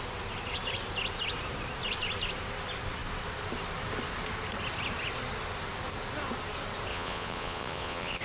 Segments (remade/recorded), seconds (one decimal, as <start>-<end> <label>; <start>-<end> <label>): 0.0-6.9 recorded; 6.9-8.2 remade